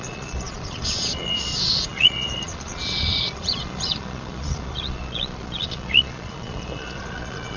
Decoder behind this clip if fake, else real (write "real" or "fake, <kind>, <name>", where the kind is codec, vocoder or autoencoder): fake, vocoder, Vocos